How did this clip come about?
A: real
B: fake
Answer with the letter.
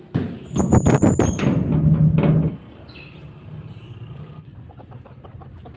A